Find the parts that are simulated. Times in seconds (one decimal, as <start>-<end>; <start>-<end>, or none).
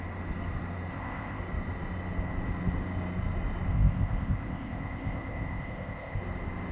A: 0.9-1.4; 3.7-6.2